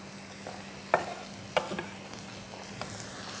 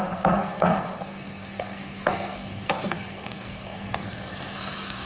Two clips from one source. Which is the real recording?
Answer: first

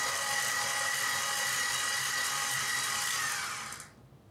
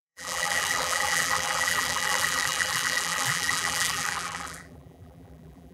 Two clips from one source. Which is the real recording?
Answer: first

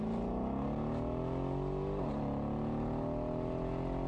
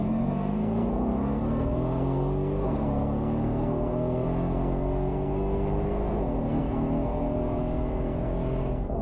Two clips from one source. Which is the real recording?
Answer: first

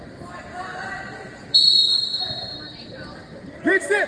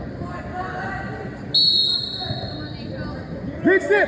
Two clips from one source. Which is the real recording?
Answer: second